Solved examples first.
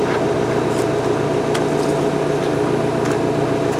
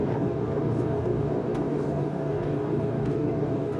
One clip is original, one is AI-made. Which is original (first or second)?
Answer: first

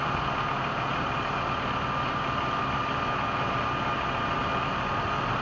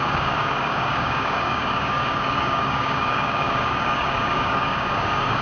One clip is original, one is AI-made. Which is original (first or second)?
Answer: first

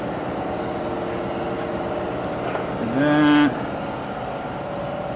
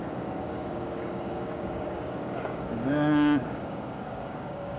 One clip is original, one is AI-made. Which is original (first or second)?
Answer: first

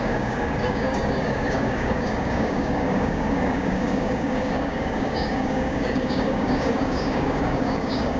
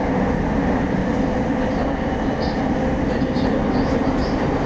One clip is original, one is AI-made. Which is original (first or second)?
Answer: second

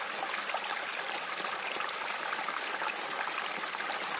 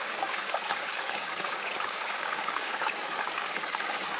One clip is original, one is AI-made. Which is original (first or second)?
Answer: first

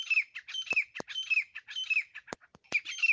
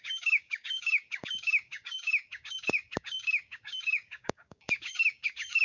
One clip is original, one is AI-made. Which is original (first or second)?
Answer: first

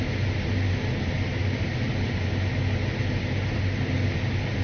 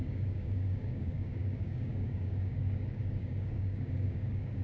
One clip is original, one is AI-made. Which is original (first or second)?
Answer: first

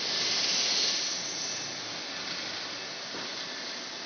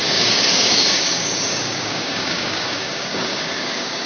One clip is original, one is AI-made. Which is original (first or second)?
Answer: first